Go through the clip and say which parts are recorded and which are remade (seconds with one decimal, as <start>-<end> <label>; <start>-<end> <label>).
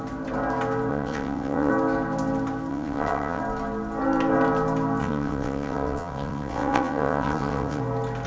0.0-0.9 recorded; 0.9-1.7 remade; 1.7-2.7 recorded; 2.7-3.4 remade; 3.4-5.0 recorded; 5.0-7.8 remade; 7.8-8.3 recorded